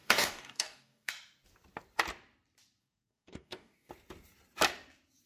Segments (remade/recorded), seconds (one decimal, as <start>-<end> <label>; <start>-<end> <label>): 0.0-1.1 remade; 1.1-2.8 recorded; 2.8-3.9 remade; 3.9-5.3 recorded